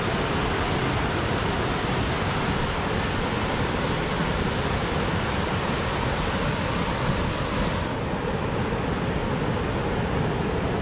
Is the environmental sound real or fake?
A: real